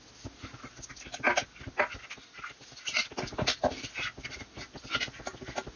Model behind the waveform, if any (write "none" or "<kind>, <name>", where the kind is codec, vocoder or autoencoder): none